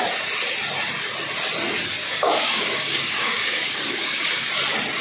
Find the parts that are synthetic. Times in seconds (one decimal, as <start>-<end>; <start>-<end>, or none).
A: 2.0-4.5